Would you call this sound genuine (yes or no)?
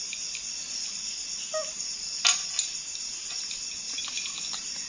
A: yes